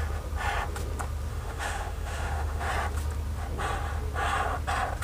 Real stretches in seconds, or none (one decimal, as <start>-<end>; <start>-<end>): 0.0-1.3; 2.7-5.0